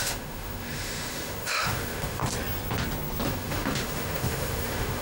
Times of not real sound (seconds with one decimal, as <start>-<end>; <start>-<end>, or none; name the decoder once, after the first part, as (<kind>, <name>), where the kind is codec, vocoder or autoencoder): 0.0-2.2 (autoencoder, DAC-VAE); 3.3-5.0